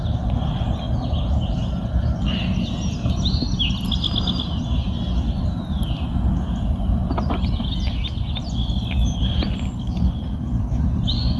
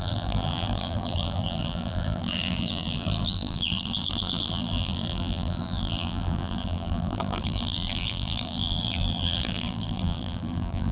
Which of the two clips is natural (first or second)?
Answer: first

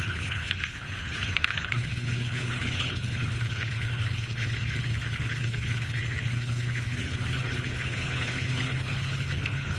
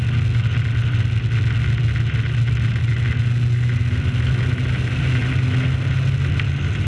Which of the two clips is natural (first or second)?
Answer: second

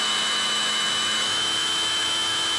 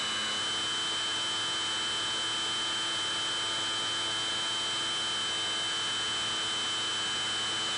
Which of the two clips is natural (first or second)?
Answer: second